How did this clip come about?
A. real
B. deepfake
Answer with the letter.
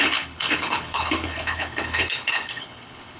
B